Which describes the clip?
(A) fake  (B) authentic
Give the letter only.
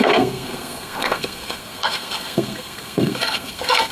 A